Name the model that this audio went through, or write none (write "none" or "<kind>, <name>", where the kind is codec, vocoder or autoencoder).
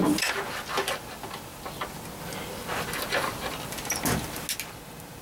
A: none